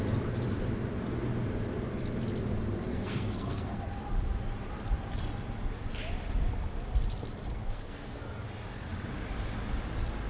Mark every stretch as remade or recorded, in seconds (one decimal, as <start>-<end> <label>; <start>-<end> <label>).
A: 0.0-2.9 recorded; 2.9-3.8 remade; 3.8-7.5 recorded; 7.5-8.3 remade; 8.3-10.3 recorded